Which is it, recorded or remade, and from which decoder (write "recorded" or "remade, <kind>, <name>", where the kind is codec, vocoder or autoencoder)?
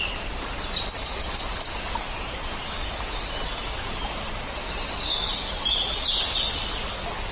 recorded